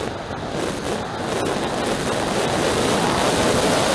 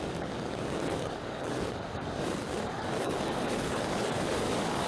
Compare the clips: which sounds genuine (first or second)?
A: first